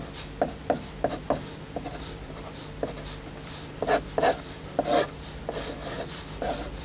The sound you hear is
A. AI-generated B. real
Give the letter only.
A